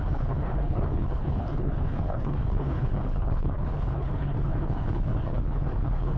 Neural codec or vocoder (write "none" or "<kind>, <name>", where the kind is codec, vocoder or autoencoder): codec, HILCodec